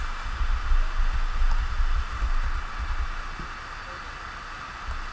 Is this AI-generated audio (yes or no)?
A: no